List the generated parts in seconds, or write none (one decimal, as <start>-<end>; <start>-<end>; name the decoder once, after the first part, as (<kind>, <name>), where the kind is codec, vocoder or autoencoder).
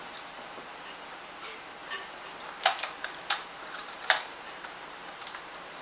0.0-1.8 (vocoder, BigVGAN v2); 3.3-5.8